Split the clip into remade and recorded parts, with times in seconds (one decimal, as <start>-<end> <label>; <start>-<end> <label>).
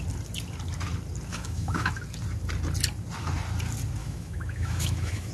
0.0-1.3 recorded; 1.3-1.9 remade; 1.9-4.0 recorded; 4.0-5.3 remade